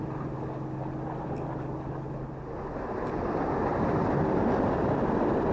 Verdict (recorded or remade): recorded